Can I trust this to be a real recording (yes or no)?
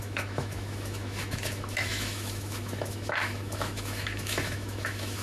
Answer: no